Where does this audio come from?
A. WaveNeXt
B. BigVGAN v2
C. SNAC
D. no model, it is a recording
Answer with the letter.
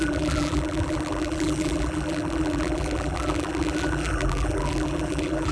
B